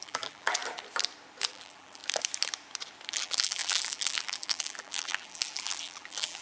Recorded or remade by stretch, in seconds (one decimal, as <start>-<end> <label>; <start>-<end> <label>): 0.0-0.6 remade; 0.6-1.5 recorded; 1.5-2.0 remade; 2.0-3.1 recorded; 3.1-6.4 remade